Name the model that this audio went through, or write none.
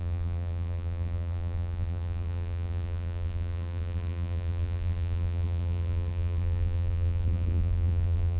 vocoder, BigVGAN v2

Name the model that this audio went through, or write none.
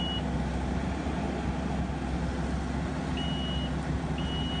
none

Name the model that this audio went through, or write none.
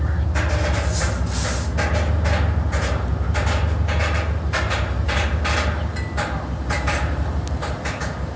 none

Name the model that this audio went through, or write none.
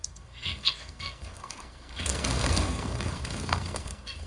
codec, SNAC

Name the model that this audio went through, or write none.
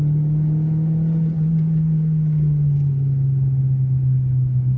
none